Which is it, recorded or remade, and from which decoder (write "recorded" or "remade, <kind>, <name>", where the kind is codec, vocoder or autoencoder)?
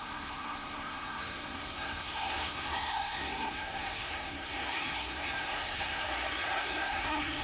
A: remade, codec, SNAC